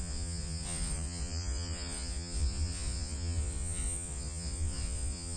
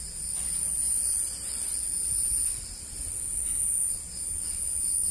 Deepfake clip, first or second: first